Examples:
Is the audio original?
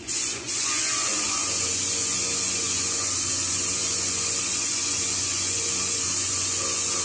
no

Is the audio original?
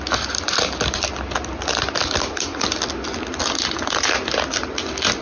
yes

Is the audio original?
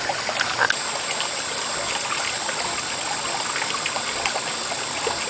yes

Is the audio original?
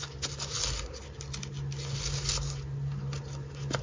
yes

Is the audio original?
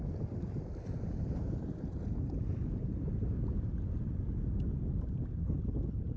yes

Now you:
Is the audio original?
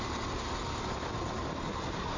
no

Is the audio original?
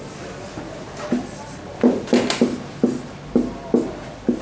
yes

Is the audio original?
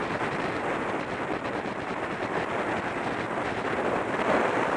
yes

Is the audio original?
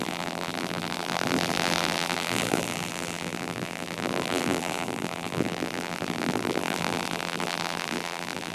no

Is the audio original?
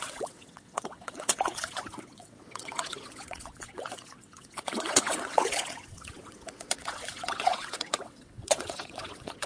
no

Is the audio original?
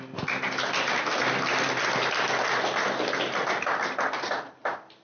yes